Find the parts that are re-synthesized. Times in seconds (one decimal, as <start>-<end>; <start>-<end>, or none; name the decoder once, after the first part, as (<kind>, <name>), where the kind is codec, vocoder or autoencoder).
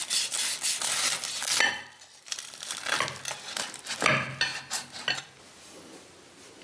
none